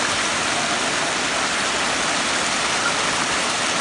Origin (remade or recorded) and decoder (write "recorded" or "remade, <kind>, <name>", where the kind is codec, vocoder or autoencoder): recorded